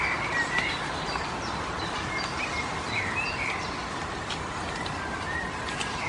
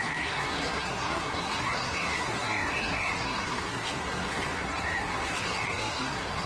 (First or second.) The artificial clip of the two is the second